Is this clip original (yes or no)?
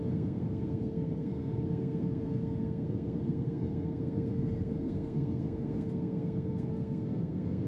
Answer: no